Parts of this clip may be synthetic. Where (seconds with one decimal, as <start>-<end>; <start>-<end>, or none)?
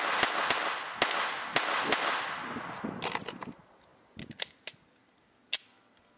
none